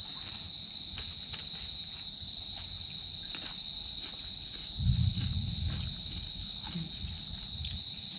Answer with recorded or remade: recorded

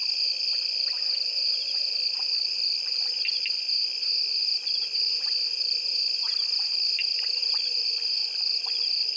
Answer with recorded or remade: recorded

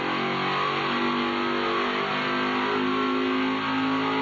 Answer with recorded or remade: recorded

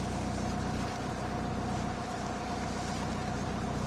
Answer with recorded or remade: recorded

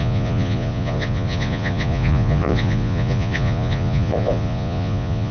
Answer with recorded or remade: remade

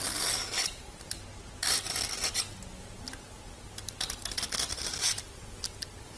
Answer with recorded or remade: recorded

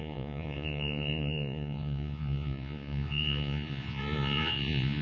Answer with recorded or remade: remade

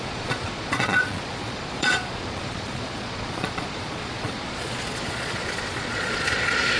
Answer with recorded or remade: remade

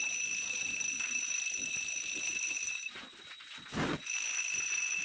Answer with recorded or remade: recorded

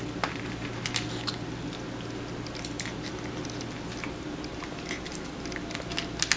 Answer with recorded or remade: recorded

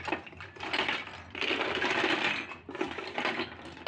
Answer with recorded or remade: recorded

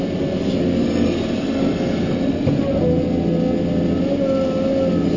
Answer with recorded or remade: recorded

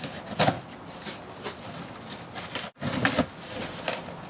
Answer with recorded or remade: recorded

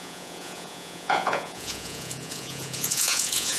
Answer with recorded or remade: remade